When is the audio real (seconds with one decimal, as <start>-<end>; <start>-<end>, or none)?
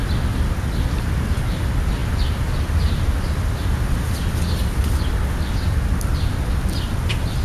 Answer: 0.0-7.4